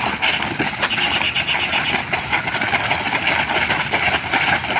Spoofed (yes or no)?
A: no